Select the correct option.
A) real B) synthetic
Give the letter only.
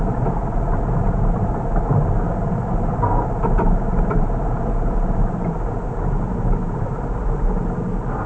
A